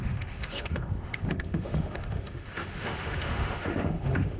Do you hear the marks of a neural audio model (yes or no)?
yes